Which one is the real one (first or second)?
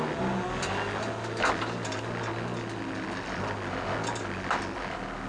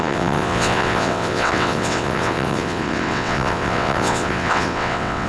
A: first